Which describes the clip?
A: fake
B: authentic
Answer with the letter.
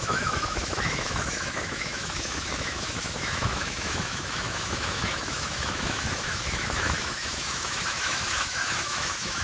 A